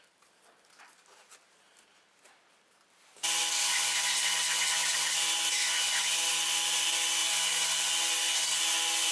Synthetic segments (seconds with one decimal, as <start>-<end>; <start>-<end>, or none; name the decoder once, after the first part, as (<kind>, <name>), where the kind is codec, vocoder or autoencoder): 0.0-7.2 (vocoder, BigVGAN v2); 8.7-9.1